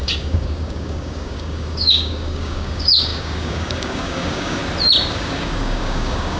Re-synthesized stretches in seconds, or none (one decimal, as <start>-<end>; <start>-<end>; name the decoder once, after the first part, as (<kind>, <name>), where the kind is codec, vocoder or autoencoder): 0.0-4.6 (codec, DAC); 5.1-6.4

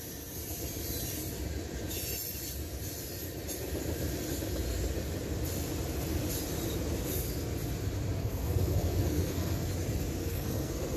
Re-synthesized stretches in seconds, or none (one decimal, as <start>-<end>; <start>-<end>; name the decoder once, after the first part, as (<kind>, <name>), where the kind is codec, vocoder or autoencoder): 8.2-9.7 (codec, SNAC); 10.2-11.0

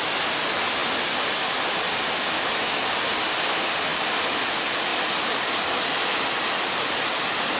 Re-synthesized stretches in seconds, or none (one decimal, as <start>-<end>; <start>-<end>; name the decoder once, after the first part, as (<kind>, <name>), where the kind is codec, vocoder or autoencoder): none

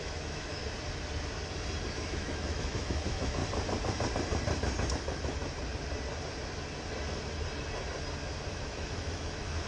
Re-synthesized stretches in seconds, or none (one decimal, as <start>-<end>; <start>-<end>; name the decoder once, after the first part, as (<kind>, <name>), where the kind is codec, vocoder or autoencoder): 0.0-0.6 (autoencoder, DAC-VAE); 1.9-3.4; 4.9-5.4; 8.5-9.7

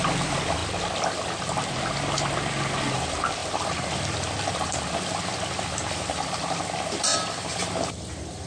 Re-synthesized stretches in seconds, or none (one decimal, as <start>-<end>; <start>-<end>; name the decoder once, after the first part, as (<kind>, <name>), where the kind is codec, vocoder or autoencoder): 0.0-0.6 (vocoder, BigVGAN v2); 2.9-8.5